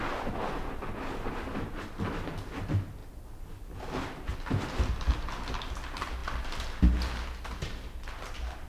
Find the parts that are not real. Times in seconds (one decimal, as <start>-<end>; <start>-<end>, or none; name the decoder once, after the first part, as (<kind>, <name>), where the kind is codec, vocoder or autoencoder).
none